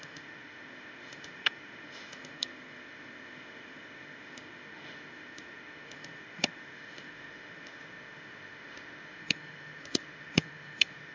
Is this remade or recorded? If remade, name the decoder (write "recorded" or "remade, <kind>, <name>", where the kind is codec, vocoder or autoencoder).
remade, autoencoder, DAC-VAE